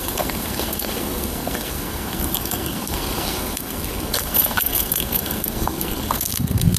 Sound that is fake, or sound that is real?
fake